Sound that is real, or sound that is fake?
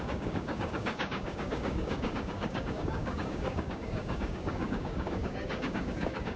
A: fake